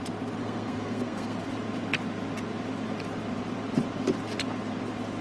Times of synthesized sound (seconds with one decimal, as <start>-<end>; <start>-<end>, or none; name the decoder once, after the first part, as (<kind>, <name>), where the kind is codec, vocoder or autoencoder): 0.4-1.4 (codec, SNAC)